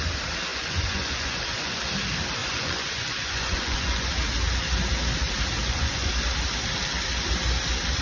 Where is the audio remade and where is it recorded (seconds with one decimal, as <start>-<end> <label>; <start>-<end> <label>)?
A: 0.0-0.5 recorded; 0.5-1.8 remade; 1.8-2.4 recorded; 2.4-4.1 remade; 4.1-5.6 recorded; 5.6-6.1 remade; 6.1-8.0 recorded